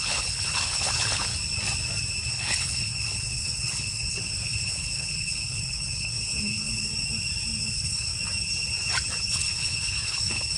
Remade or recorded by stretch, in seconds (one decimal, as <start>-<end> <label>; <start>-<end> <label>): 0.0-1.3 remade; 1.3-2.3 recorded; 2.3-6.9 remade; 6.9-7.6 recorded; 7.6-8.1 remade; 8.1-9.2 recorded; 9.2-10.6 remade